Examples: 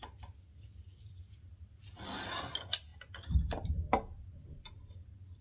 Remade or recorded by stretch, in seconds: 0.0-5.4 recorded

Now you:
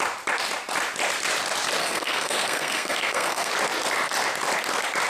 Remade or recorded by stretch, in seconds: 0.0-1.8 recorded; 1.8-3.5 remade; 3.5-5.1 recorded

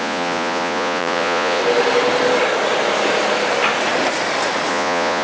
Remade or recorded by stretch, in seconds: 0.0-1.6 remade; 1.6-4.7 recorded; 4.7-5.2 remade

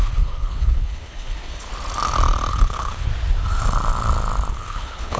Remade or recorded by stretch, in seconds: 0.0-1.7 remade; 1.7-2.5 recorded; 2.5-3.1 remade; 3.1-4.5 recorded; 4.5-5.2 remade

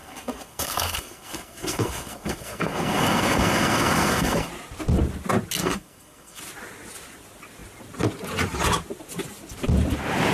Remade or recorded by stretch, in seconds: 0.0-4.5 remade; 4.5-5.6 recorded; 5.6-6.4 remade; 6.4-10.3 recorded

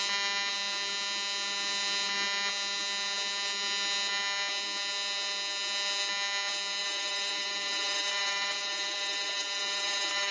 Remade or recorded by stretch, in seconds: 0.0-6.8 recorded; 6.8-10.3 remade

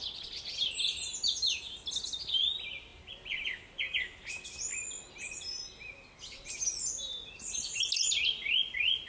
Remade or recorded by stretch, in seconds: 0.0-9.1 recorded

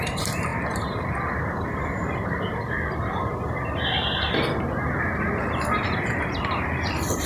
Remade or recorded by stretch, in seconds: 0.0-7.3 remade